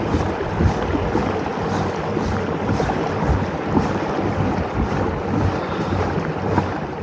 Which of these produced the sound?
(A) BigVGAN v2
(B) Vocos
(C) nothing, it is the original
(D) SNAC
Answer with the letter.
C